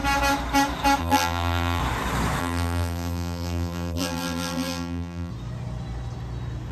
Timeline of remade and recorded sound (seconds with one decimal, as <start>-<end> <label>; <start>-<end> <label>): 0.0-1.0 recorded; 1.0-1.8 remade; 1.8-2.4 recorded; 2.4-5.3 remade; 5.3-6.7 recorded

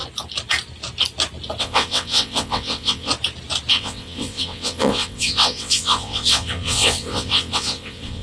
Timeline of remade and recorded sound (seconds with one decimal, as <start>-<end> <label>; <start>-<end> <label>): 0.0-1.6 recorded; 1.6-3.1 remade; 3.1-3.7 recorded; 3.7-8.2 remade

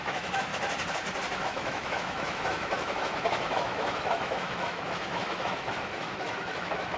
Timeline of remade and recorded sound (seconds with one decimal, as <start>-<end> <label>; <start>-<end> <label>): 0.0-0.5 remade; 0.5-1.4 recorded; 1.4-7.0 remade

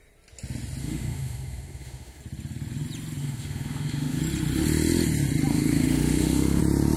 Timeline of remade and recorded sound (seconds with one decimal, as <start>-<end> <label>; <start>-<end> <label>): 0.0-0.8 recorded; 0.8-2.2 remade; 2.2-3.2 recorded; 3.2-4.2 remade; 4.2-5.5 recorded; 5.5-6.6 remade; 6.6-7.0 recorded

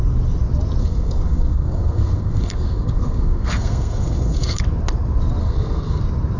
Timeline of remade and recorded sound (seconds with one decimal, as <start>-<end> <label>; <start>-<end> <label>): 0.0-0.8 recorded; 0.8-4.6 remade; 4.6-5.4 recorded; 5.4-6.0 remade; 6.0-6.4 recorded